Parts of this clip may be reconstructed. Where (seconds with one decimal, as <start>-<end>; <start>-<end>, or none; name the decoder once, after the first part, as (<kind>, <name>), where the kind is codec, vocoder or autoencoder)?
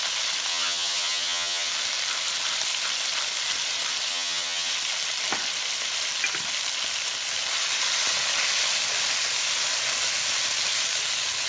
0.5-1.7 (vocoder, HiFi-GAN); 4.1-4.7